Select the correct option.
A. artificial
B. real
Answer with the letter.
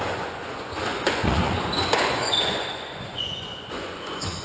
A